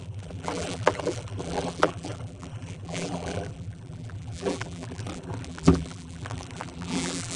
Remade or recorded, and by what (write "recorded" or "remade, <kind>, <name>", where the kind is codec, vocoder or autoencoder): remade, vocoder, BigVGAN v2